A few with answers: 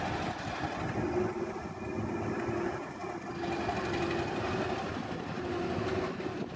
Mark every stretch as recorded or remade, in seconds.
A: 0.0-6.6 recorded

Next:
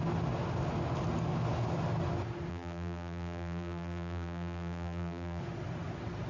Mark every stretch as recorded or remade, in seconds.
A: 0.0-2.5 recorded; 2.5-5.4 remade; 5.4-6.3 recorded

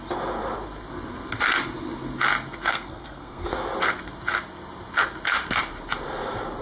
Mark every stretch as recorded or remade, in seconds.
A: 0.0-2.7 recorded; 2.7-3.5 remade; 3.5-6.6 recorded

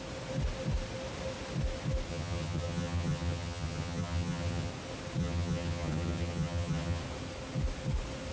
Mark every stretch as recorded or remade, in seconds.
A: 0.0-2.1 recorded; 2.1-4.7 remade; 4.7-5.2 recorded; 5.2-7.0 remade; 7.0-8.3 recorded

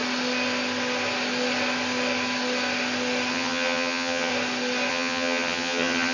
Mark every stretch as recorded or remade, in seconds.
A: 0.0-3.3 recorded; 3.3-4.3 remade; 4.3-4.9 recorded; 4.9-6.1 remade

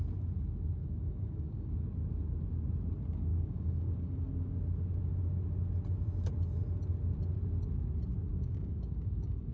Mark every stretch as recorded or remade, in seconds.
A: 0.0-0.8 recorded; 0.8-1.7 remade; 1.7-3.3 recorded; 3.3-4.5 remade; 4.5-8.3 recorded; 8.3-9.5 remade

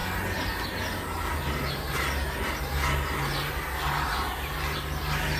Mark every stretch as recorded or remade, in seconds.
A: 0.0-5.4 recorded